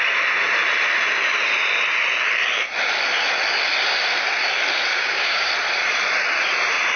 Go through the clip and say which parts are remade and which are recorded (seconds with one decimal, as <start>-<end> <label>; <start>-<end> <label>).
0.0-4.9 recorded; 4.9-5.5 remade; 5.5-7.0 recorded